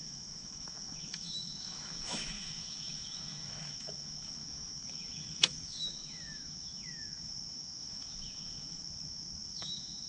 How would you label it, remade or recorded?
remade